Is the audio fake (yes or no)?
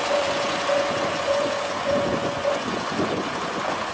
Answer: yes